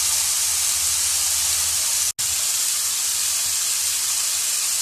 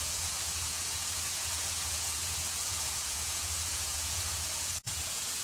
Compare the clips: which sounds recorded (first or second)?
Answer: first